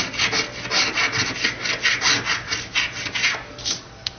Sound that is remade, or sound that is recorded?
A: recorded